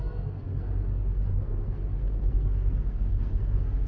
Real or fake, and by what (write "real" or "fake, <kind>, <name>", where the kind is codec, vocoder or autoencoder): fake, codec, SNAC